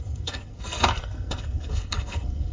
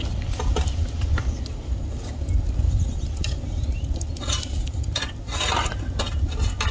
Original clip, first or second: second